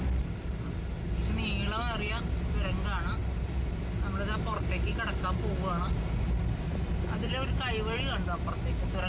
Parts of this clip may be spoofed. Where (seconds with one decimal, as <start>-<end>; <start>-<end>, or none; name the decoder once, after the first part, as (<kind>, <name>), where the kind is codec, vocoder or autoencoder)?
none